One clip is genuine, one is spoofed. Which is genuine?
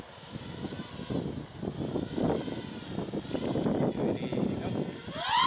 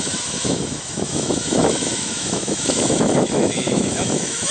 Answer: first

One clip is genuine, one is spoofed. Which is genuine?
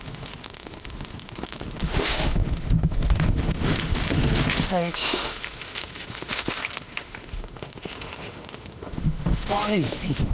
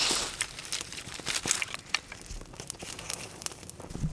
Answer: second